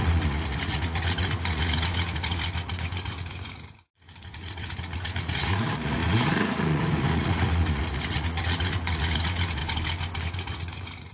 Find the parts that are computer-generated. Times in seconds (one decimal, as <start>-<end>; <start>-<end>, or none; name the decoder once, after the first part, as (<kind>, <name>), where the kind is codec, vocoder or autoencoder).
0.0-9.6 (vocoder, Vocos); 10.2-11.1